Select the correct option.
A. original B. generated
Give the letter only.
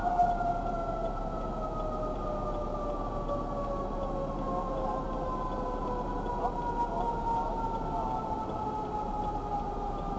A